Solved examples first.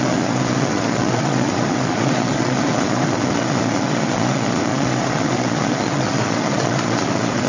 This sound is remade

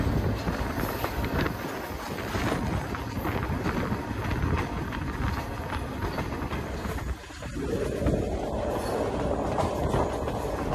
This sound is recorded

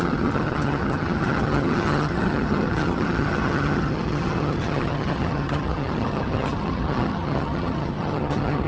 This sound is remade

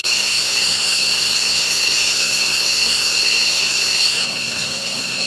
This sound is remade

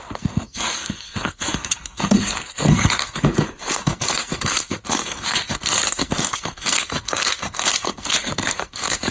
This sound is remade